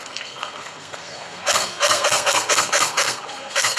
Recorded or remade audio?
remade